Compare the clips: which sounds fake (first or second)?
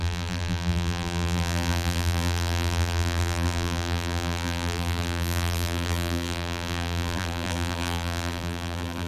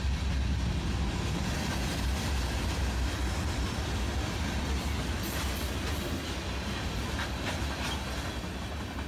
first